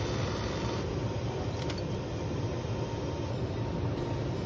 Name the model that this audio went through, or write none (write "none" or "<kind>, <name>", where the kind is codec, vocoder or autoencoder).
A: none